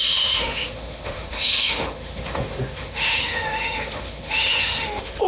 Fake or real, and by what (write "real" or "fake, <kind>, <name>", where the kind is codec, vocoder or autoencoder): fake, autoencoder, DAC-VAE